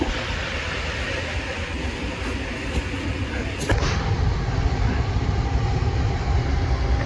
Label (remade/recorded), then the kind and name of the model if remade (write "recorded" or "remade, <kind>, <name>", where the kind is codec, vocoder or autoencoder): recorded